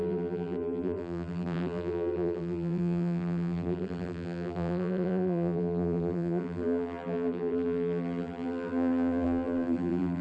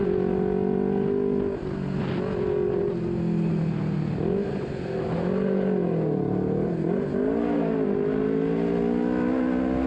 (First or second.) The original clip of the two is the second